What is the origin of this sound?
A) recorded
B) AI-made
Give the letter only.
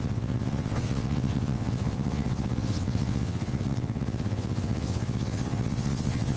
B